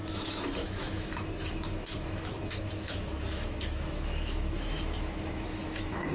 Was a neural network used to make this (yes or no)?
yes